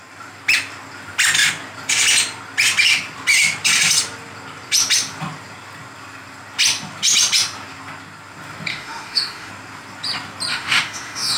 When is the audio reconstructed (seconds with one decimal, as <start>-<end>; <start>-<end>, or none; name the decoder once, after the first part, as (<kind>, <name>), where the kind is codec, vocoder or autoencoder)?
8.7-9.5 (autoencoder, DAC-VAE); 10.5-11.4